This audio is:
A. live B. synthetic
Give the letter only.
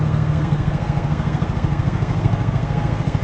B